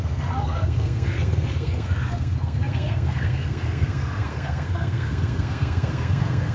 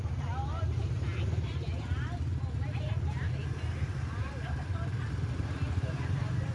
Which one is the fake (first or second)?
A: first